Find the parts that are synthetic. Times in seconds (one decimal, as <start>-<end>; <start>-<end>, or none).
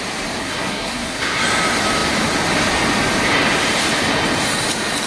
0.4-1.4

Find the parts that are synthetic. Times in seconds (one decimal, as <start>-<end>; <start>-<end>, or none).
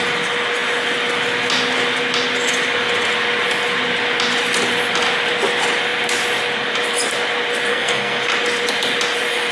7.7-8.2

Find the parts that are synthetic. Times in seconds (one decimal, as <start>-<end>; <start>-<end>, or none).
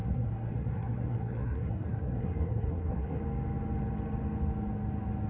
0.0-3.2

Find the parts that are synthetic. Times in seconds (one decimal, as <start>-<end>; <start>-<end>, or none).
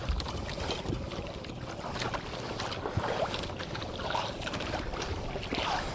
0.0-2.2; 4.0-5.5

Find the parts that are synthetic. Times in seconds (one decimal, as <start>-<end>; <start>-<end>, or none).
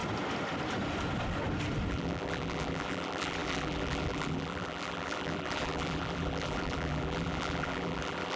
1.9-8.4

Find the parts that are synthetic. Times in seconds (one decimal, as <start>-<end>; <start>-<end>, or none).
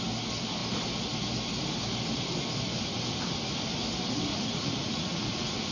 4.3-5.7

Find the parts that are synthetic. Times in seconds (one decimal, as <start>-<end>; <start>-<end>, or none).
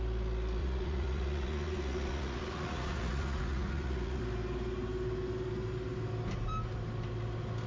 0.6-4.2